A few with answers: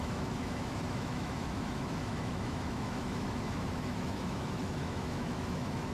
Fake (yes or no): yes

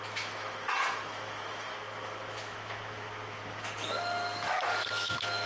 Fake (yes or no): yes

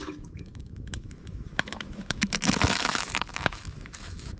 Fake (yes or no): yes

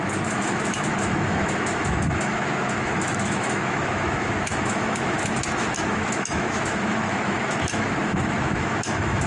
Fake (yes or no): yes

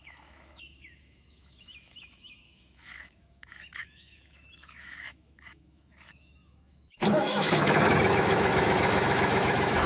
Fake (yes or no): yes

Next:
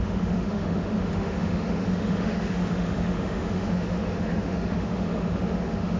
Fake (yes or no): yes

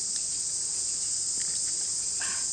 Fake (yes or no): no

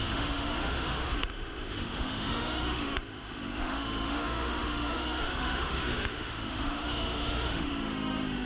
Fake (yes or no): yes